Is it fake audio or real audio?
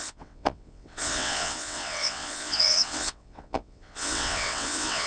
fake